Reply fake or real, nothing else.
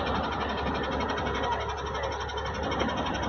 real